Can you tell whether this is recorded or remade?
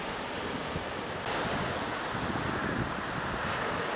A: recorded